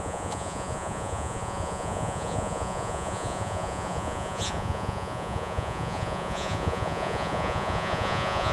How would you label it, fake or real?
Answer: fake